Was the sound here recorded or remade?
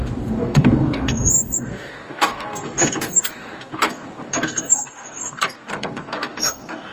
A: remade